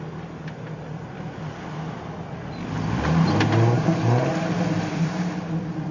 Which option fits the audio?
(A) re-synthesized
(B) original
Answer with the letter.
B